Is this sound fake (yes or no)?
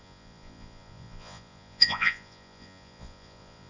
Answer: yes